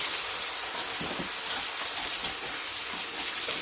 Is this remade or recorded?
recorded